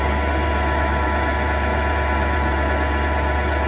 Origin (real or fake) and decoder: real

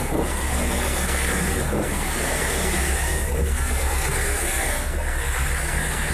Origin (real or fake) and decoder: fake, codec, SNAC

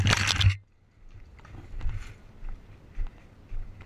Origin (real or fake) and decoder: real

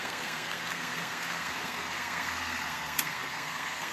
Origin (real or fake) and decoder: fake, codec, SNAC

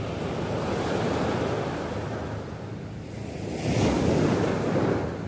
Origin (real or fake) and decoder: real